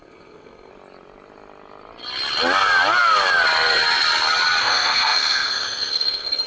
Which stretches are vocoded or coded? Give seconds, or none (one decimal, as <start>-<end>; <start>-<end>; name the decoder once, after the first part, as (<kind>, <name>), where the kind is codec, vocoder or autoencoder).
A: 0.0-0.7 (codec, SNAC); 4.6-6.5